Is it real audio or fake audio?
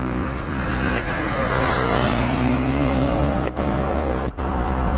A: fake